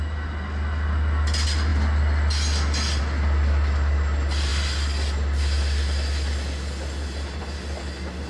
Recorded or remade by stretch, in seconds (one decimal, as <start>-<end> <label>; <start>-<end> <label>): 0.0-8.3 recorded